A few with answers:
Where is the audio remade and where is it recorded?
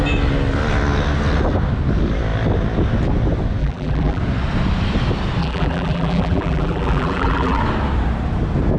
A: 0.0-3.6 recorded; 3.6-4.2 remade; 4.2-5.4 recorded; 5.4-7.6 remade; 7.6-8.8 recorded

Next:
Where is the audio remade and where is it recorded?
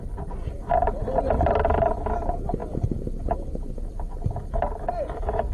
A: 0.0-1.0 recorded; 1.0-1.5 remade; 1.5-5.5 recorded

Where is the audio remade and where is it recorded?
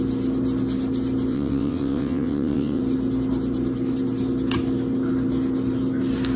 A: 0.0-1.3 recorded; 1.3-2.8 remade; 2.8-6.4 recorded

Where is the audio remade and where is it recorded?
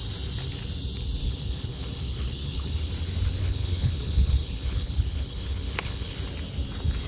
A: 0.0-1.2 recorded; 1.2-2.9 remade; 2.9-3.4 recorded; 3.4-6.2 remade; 6.2-7.1 recorded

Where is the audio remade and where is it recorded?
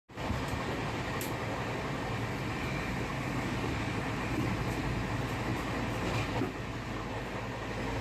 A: 0.0-3.1 recorded; 3.1-4.0 remade; 4.0-8.0 recorded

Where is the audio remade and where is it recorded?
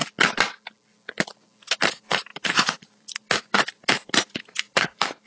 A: 0.0-1.8 recorded; 1.8-5.3 remade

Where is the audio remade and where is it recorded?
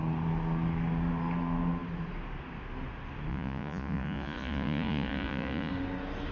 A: 0.0-3.3 recorded; 3.3-5.7 remade; 5.7-6.3 recorded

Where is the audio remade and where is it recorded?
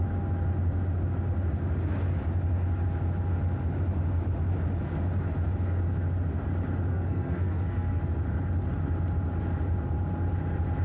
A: 0.0-6.9 recorded; 6.9-8.0 remade; 8.0-10.8 recorded